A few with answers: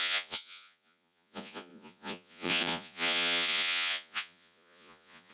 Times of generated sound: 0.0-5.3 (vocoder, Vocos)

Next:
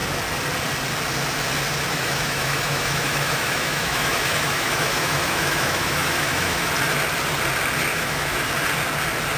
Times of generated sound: 1.9-6.7 (autoencoder, DAC-VAE); 7.9-8.5